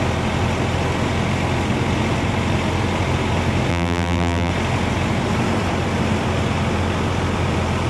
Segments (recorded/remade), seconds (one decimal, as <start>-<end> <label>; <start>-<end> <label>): 0.0-3.7 recorded; 3.7-4.5 remade; 4.5-7.9 recorded